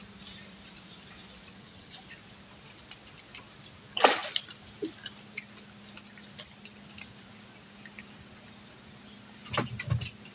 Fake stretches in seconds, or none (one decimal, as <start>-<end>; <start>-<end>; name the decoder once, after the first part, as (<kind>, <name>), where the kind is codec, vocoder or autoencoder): 1.5-2.0 (vocoder, WaveNeXt)